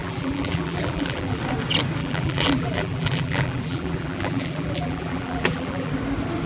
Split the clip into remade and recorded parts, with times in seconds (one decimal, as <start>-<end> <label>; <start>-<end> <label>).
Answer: 0.0-1.4 remade; 1.4-2.0 recorded; 2.0-5.9 remade; 5.9-6.5 recorded